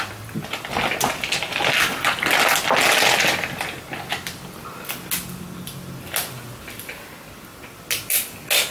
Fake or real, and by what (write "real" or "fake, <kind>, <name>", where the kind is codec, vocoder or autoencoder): real